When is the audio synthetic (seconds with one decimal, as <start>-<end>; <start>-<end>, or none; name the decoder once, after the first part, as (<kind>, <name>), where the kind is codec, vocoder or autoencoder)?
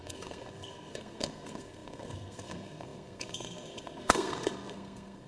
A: 0.0-5.3 (codec, SNAC)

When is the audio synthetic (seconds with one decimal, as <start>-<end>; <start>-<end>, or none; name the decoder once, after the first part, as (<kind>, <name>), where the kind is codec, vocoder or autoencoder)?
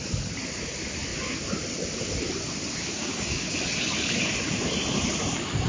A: 3.0-3.5 (codec, DAC)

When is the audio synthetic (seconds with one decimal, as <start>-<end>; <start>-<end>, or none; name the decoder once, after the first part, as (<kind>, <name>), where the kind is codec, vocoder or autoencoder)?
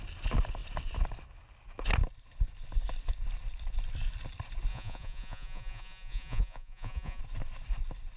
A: 4.7-7.2 (vocoder, Vocos)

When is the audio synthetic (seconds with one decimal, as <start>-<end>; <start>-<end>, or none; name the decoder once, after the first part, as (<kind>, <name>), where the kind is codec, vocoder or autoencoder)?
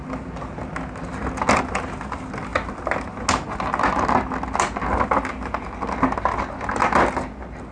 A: none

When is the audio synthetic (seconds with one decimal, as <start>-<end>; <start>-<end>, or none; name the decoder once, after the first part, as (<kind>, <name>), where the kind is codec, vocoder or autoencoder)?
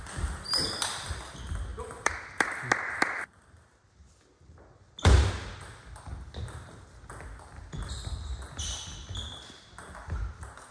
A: none